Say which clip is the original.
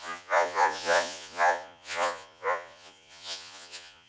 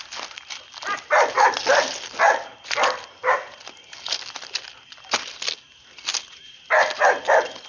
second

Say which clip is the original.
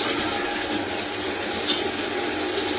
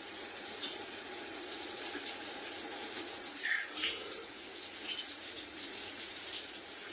first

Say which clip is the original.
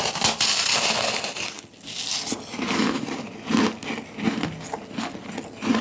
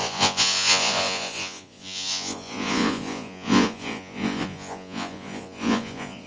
first